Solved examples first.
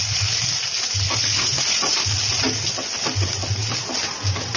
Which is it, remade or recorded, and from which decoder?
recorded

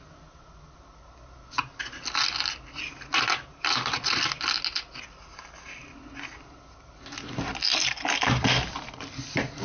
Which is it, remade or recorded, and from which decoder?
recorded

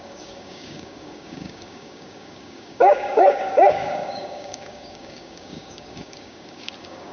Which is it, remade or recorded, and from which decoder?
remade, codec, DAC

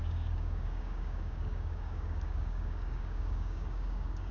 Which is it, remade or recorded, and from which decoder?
remade, codec, DAC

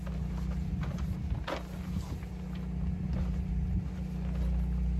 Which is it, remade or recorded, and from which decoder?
recorded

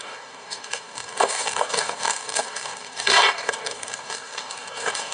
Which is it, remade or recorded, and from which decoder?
remade, codec, DAC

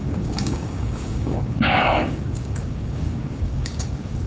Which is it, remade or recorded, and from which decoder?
remade, codec, DAC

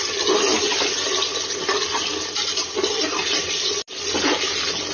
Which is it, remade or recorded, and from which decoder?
recorded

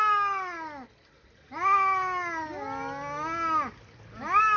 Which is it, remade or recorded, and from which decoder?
recorded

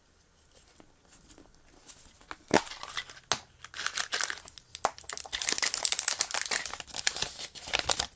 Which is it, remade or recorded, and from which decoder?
recorded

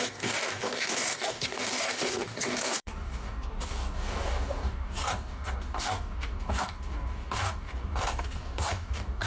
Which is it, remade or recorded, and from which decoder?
remade, codec, DAC